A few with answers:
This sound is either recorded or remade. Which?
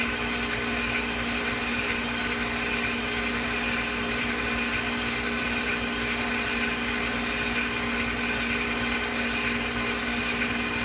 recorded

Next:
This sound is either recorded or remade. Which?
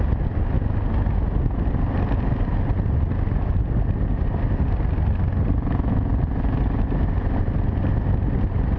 recorded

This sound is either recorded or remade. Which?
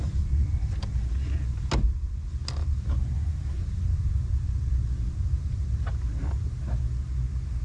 recorded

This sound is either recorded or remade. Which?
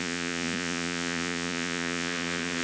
remade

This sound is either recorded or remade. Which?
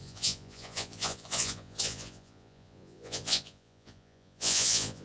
remade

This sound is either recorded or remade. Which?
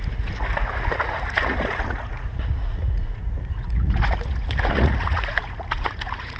remade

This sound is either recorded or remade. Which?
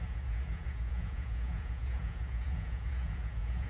remade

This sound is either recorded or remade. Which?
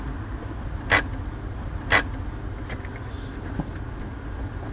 recorded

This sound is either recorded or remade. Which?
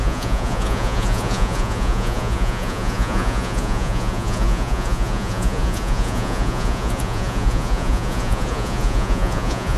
remade